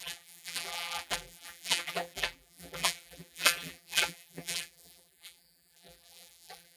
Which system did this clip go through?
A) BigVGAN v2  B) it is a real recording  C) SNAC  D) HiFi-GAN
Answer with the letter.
A